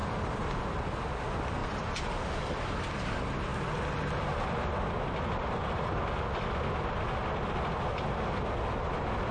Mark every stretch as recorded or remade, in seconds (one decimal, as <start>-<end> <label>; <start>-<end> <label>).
0.0-9.3 recorded